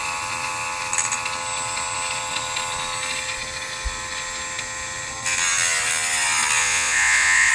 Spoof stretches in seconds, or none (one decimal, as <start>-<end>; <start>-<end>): 6.6-7.5